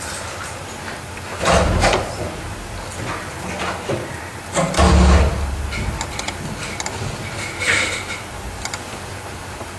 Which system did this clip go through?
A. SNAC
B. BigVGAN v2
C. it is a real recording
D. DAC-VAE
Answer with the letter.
C